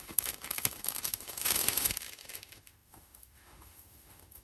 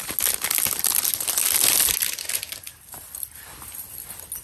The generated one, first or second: first